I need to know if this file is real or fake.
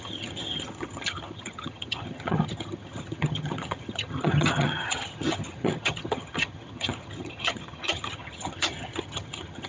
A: fake